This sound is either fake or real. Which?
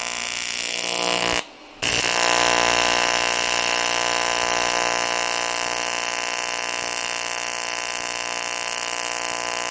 real